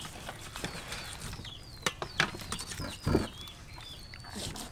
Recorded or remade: recorded